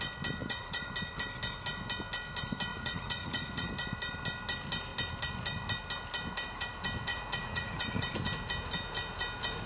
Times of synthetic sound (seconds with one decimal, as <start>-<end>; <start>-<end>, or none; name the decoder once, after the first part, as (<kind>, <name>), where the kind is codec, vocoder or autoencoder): 0.4-0.9 (vocoder, Vocos); 2.7-3.7; 7.1-8.0